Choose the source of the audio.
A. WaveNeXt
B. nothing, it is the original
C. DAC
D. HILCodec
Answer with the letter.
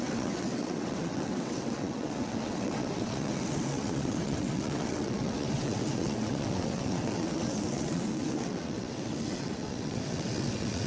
A